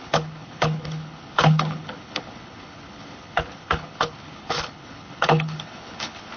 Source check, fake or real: fake